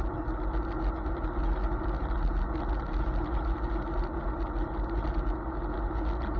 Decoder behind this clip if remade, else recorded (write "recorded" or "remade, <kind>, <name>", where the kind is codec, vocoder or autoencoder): recorded